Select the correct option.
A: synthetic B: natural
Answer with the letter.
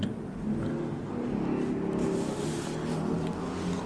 B